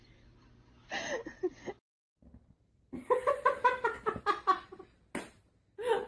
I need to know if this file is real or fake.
real